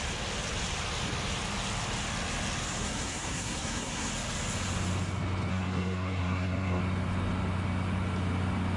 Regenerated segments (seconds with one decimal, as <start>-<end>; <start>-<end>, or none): 2.8-4.1; 5.5-6.8